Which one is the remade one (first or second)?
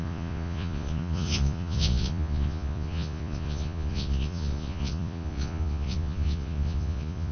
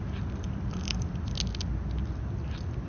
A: first